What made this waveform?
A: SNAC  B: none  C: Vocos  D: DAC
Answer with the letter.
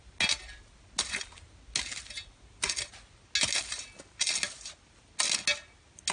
B